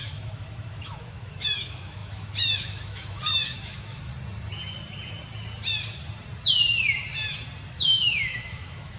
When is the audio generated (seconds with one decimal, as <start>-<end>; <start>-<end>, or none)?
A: 0.0-4.1; 7.7-9.0